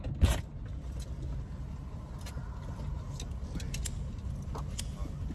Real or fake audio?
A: real